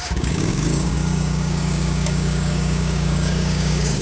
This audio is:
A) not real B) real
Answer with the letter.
A